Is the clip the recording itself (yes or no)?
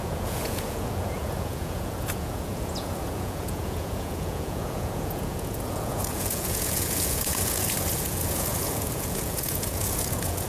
no